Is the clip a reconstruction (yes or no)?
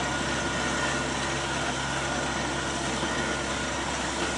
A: no